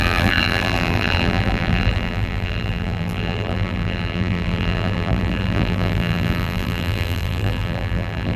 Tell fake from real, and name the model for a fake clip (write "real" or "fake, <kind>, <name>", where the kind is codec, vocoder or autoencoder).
fake, vocoder, BigVGAN v2